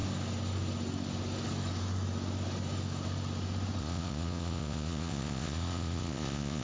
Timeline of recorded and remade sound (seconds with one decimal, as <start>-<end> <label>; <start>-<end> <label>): 0.0-3.8 recorded; 3.8-6.6 remade